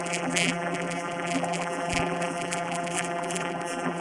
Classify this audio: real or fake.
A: fake